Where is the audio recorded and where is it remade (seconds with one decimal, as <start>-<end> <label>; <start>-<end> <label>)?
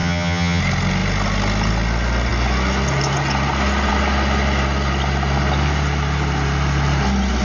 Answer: 0.0-0.6 remade; 0.6-7.4 recorded